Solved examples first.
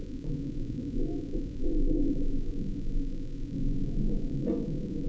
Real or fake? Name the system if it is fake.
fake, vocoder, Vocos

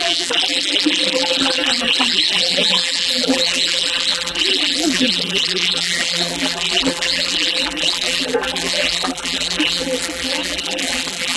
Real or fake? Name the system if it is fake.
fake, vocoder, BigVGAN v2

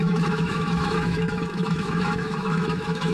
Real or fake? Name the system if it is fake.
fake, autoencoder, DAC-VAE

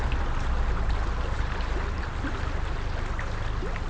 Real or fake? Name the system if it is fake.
real